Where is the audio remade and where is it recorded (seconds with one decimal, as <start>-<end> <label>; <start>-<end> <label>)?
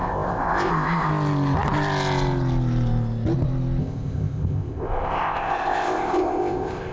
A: 0.0-1.1 remade; 1.1-3.8 recorded; 3.8-6.9 remade